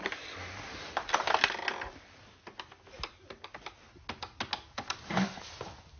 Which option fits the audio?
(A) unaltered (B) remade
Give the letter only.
A